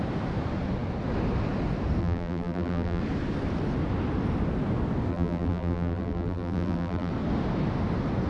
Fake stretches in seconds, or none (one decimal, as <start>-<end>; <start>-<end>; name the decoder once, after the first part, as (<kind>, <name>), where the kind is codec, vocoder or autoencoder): 2.0-3.0 (vocoder, BigVGAN v2); 5.1-7.1